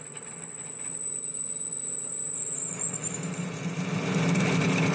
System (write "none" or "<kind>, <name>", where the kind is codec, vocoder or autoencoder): none